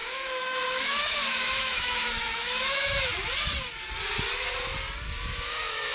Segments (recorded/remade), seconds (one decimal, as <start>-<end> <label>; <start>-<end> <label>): 0.0-3.1 remade; 3.1-5.3 recorded; 5.3-5.9 remade